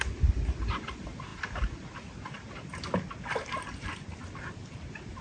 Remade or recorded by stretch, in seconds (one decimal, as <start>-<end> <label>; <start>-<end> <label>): 0.0-5.2 recorded

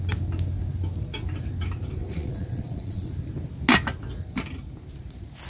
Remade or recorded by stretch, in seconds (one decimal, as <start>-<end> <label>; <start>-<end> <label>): 0.0-2.0 recorded; 2.0-3.1 remade; 3.1-5.5 recorded

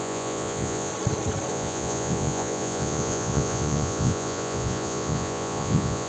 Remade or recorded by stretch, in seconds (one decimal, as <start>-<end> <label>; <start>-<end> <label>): 0.0-0.9 remade; 0.9-1.5 recorded; 1.5-6.1 remade

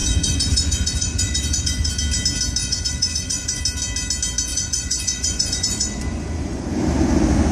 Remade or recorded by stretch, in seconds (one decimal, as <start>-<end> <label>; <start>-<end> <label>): 0.0-1.9 remade; 1.9-2.6 recorded; 2.6-3.6 remade; 3.6-4.5 recorded; 4.5-6.6 remade; 6.6-7.5 recorded

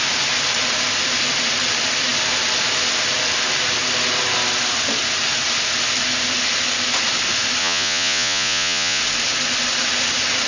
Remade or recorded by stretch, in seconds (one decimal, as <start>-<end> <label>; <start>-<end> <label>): 0.0-7.6 recorded; 7.6-9.0 remade; 9.0-10.5 recorded

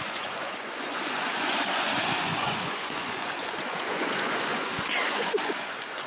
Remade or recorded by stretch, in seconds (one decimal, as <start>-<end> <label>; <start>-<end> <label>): 0.0-6.1 remade